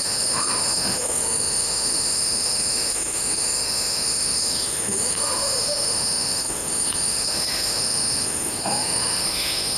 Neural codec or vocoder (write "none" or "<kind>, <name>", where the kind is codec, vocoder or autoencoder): autoencoder, DAC-VAE